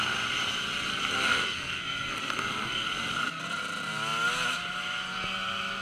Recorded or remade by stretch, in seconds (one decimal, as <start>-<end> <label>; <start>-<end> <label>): 0.0-0.9 recorded; 0.9-3.4 remade; 3.4-5.8 recorded